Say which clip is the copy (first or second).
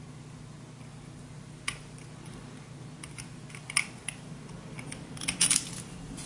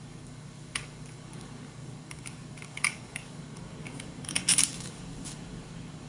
second